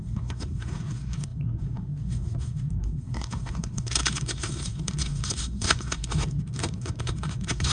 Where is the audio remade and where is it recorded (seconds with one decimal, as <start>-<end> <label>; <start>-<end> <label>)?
0.0-7.7 remade